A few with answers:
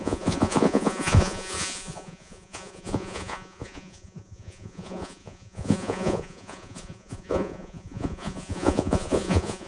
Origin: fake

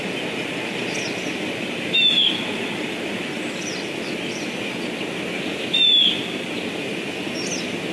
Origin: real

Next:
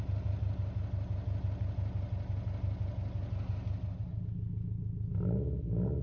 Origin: real